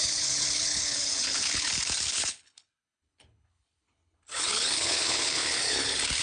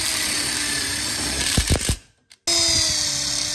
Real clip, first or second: second